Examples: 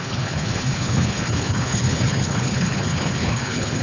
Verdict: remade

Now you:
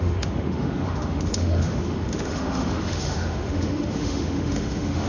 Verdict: remade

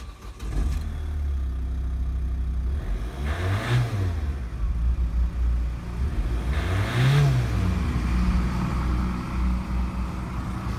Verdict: recorded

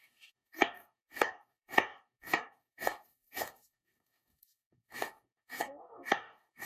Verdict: remade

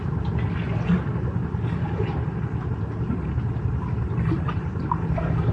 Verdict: recorded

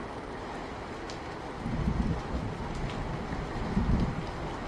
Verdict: recorded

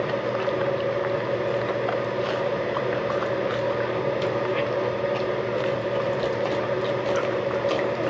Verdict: recorded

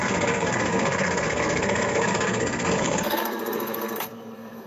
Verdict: remade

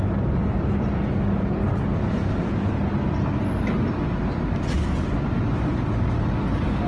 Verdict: recorded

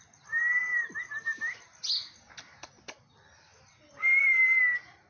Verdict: recorded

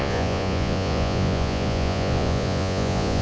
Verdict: remade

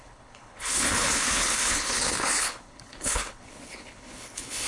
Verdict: remade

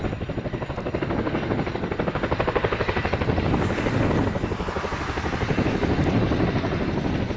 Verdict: recorded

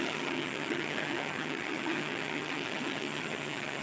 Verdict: remade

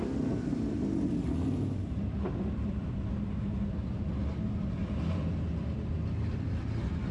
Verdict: remade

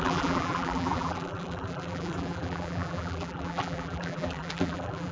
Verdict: remade